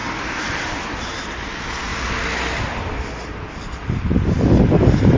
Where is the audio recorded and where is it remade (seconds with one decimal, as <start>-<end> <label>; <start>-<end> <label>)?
0.0-1.1 remade; 1.1-1.9 recorded; 1.9-5.2 remade